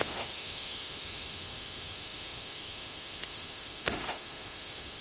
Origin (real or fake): fake